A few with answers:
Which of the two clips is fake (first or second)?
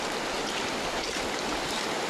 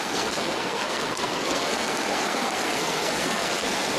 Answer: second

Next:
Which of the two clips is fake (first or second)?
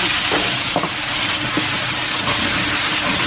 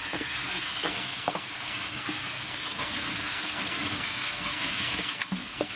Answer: second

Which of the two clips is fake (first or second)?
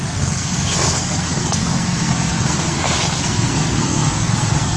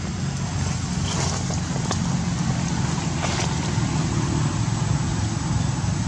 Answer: first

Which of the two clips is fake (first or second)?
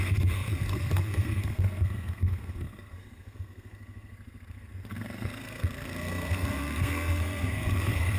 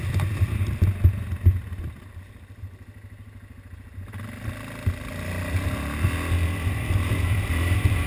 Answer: first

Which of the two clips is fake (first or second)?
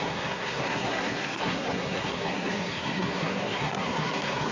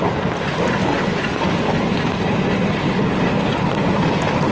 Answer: first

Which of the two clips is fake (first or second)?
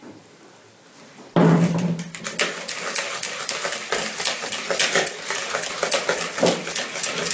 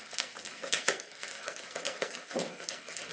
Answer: second